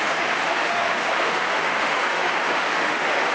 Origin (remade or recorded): remade